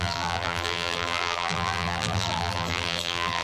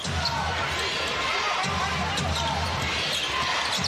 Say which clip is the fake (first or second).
first